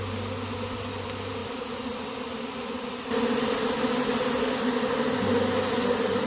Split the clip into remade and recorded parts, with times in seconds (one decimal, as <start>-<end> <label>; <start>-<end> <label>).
0.0-6.3 recorded